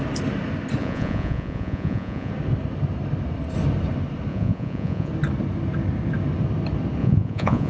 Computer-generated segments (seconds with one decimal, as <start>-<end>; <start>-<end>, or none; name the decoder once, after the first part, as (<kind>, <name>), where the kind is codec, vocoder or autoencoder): 0.8-2.3 (vocoder, Vocos); 4.3-5.1; 7.0-7.7